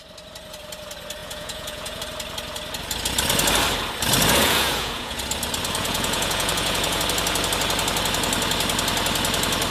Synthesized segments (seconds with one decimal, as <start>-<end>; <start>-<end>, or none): 1.2-2.0; 4.4-5.2; 5.8-7.0